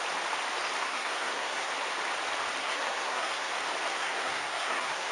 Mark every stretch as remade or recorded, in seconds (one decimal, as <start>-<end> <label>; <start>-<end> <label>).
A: 0.0-0.8 recorded; 0.8-1.7 remade; 1.7-2.6 recorded; 2.6-3.5 remade; 3.5-3.9 recorded; 3.9-5.1 remade